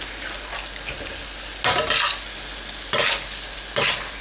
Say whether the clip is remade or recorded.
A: recorded